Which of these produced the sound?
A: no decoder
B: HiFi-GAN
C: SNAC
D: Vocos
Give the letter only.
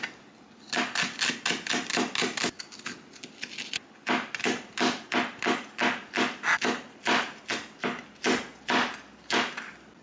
A